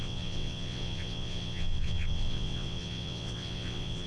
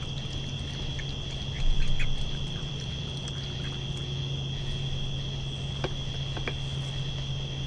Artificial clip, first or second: first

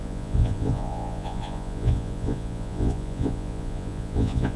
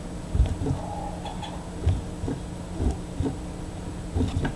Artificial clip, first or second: first